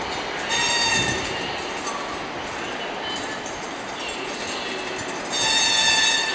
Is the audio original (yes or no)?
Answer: yes